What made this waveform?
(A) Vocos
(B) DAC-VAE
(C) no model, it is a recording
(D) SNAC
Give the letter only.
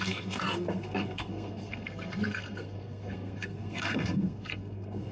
D